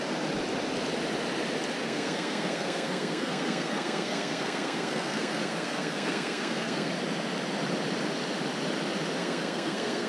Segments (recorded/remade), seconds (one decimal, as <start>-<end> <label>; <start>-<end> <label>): 0.0-1.8 recorded; 1.8-6.9 remade; 6.9-9.2 recorded; 9.2-10.1 remade